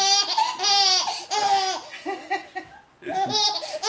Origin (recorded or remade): recorded